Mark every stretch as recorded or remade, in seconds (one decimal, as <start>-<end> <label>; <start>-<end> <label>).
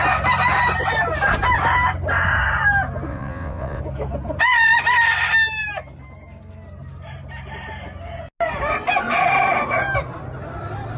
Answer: 0.0-3.1 recorded; 3.1-3.8 remade; 3.8-11.0 recorded